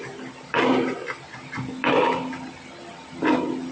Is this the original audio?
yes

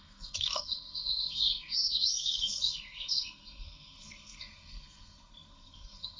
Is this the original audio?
no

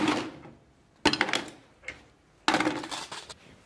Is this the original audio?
yes